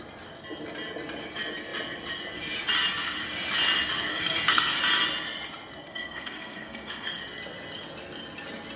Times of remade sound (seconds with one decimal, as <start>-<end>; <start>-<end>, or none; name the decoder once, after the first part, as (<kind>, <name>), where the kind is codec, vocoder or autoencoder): 4.1-4.8 (codec, SNAC); 5.8-7.2